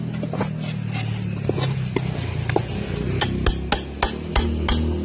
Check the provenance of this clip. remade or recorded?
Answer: recorded